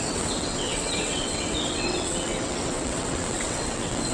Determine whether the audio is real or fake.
fake